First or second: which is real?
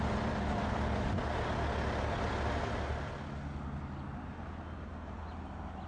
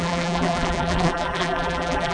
first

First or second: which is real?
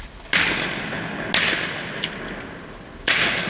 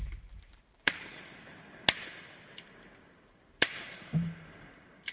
first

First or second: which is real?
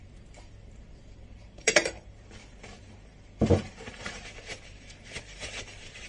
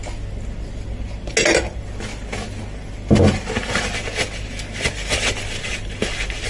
second